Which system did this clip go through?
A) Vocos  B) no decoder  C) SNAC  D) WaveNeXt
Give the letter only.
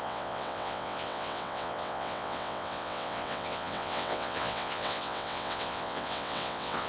D